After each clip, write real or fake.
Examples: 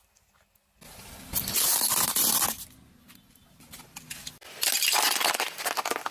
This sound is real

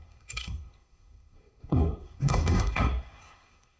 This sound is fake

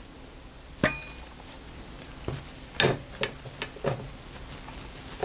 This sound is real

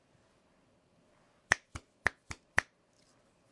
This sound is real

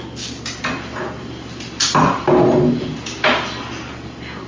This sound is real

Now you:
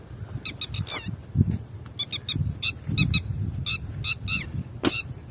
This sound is real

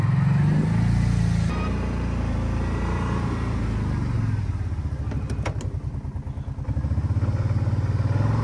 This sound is real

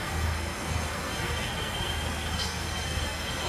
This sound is fake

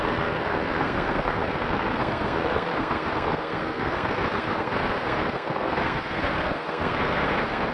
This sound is fake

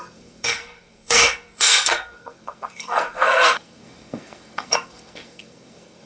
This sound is fake